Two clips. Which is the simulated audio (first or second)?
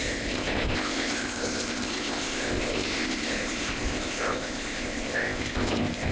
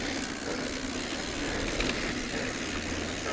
first